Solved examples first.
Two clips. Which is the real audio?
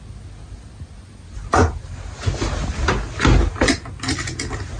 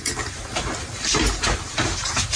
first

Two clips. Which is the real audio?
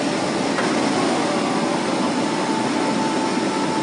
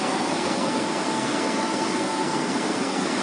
first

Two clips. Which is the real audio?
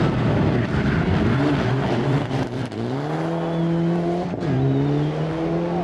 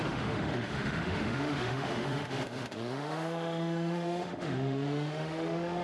first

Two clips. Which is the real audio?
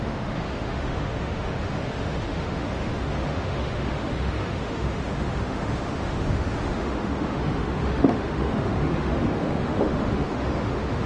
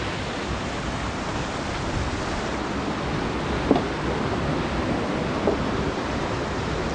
second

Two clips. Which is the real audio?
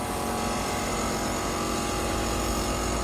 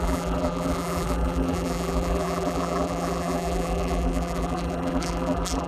first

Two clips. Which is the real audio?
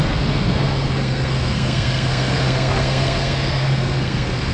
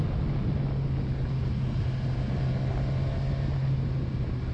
second